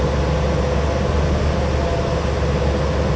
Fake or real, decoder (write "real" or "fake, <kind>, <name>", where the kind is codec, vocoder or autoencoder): real